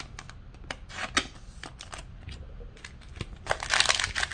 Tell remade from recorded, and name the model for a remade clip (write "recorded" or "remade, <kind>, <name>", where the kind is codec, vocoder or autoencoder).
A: recorded